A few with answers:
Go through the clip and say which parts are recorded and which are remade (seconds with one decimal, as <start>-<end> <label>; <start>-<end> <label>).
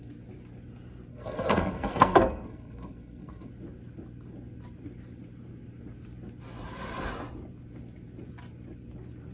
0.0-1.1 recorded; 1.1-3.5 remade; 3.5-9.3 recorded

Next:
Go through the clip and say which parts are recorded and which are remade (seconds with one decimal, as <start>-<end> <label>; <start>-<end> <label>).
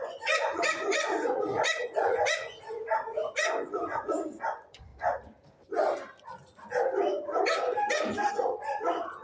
0.0-4.9 remade; 4.9-8.3 recorded; 8.3-9.2 remade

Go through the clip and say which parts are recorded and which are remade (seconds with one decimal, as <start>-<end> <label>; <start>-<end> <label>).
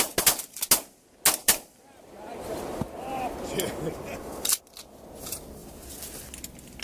0.0-1.4 recorded; 1.4-5.0 remade; 5.0-6.8 recorded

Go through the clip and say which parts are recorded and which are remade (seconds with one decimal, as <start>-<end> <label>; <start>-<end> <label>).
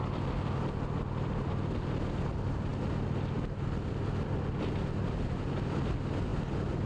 0.0-6.9 recorded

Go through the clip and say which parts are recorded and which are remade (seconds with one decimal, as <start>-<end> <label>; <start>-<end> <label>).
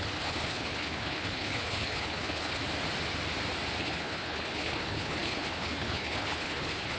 0.0-2.6 remade; 2.6-3.8 recorded; 3.8-7.0 remade